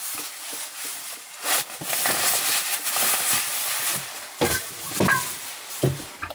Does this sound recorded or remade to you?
remade